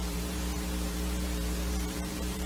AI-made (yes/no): yes